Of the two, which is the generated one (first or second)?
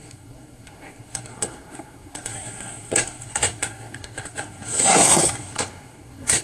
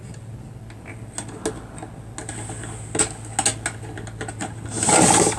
first